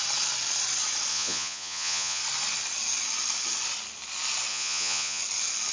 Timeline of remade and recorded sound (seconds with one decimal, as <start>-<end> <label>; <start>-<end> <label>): 0.0-1.1 recorded; 1.1-2.2 remade; 2.2-4.5 recorded; 4.5-5.2 remade; 5.2-5.7 recorded